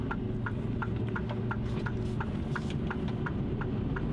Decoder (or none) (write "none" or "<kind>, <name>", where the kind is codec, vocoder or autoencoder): none